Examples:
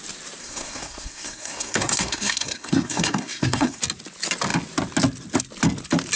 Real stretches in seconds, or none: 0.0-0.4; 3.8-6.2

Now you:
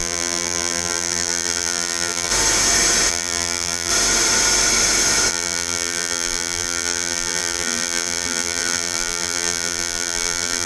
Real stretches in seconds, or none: 2.3-3.1; 3.9-5.3

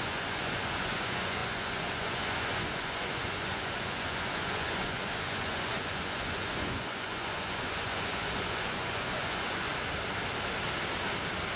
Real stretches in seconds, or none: 9.7-11.6